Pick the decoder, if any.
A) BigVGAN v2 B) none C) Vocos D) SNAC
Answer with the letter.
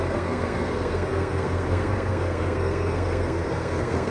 D